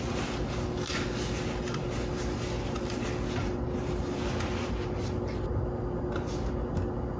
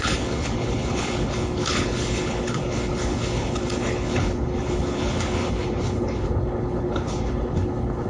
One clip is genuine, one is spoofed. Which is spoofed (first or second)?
second